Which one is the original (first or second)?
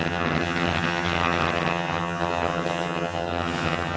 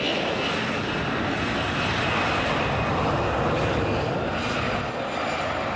second